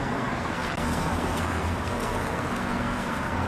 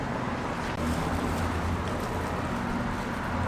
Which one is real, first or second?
second